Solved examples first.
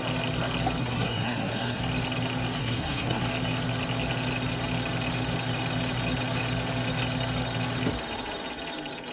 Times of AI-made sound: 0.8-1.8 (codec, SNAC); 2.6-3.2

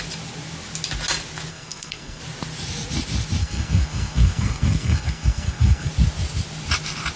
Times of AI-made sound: 1.5-2.2 (codec, SNAC); 3.4-5.9

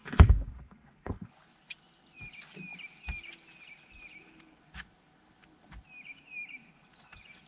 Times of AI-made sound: 0.0-1.3 (codec, SNAC)

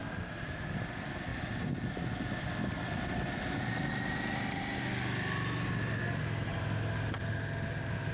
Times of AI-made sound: none

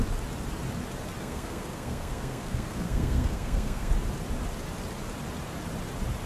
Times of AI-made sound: 1.2-3.9 (codec, SNAC)

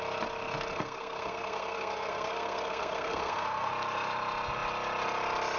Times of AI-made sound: 0.7-3.7 (codec, SNAC)